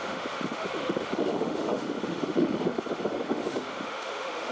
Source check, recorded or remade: remade